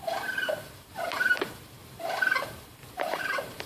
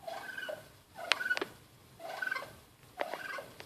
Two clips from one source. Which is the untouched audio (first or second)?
second